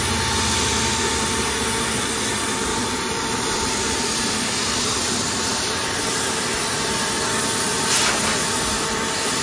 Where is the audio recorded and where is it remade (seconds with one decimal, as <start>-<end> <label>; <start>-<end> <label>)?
0.0-2.7 recorded; 2.7-6.0 remade; 6.0-9.4 recorded